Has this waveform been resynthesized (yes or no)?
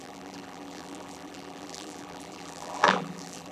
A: yes